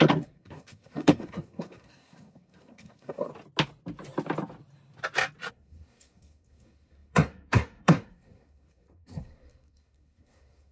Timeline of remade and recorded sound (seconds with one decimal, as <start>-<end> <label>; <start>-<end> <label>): 0.0-3.3 remade; 3.3-5.5 recorded; 5.5-10.7 remade